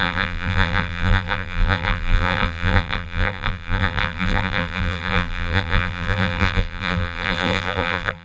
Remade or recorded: remade